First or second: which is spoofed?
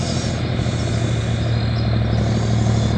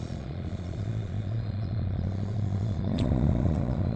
second